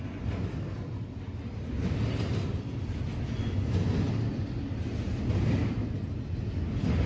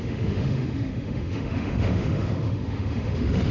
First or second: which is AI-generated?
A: second